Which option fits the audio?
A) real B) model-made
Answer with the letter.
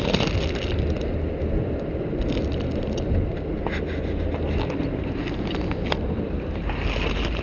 A